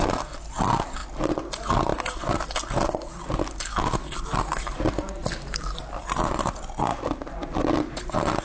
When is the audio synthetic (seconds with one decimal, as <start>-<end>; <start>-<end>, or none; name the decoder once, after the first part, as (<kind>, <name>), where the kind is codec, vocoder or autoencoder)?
none

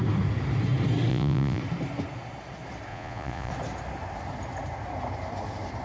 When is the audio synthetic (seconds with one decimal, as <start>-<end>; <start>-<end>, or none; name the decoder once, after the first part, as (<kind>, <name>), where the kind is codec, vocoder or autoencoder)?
1.1-1.6 (vocoder, Vocos); 2.9-3.5

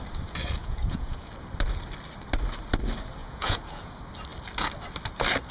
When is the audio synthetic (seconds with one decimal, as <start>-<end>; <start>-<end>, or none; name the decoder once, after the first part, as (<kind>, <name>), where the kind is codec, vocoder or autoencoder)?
0.6-1.3 (vocoder, Vocos); 3.2-3.9

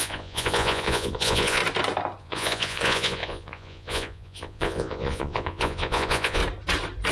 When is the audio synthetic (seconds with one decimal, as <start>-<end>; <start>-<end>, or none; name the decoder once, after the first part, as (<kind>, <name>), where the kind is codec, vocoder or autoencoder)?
0.0-1.6 (vocoder, Vocos); 2.2-6.4

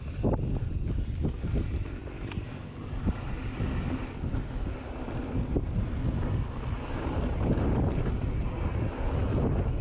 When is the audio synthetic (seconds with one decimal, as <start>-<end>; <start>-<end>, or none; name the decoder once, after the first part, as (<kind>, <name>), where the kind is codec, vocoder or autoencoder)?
none

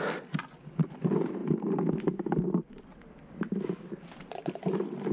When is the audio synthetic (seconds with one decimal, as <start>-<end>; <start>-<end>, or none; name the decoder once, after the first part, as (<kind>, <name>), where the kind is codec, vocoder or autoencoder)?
none

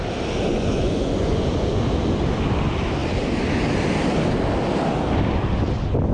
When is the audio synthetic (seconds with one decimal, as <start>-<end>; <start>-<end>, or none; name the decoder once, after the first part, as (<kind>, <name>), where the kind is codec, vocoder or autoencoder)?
0.5-1.8 (vocoder, Vocos)